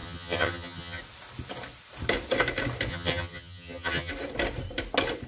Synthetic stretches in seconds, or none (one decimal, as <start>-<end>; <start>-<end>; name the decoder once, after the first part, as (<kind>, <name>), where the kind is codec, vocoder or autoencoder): 0.0-1.0 (vocoder, HiFi-GAN); 2.9-4.1